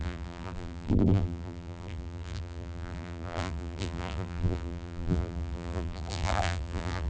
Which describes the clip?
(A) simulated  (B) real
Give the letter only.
A